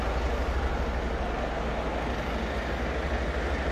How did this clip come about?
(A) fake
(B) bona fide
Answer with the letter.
B